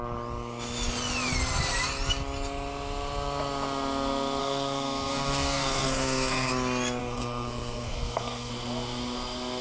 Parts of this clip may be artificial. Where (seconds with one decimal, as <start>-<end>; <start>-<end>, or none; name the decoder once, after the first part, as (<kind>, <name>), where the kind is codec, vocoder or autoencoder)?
4.4-6.5 (codec, SNAC); 7.0-8.5